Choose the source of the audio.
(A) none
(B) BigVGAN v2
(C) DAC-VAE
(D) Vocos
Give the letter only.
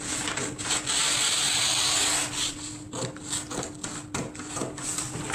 B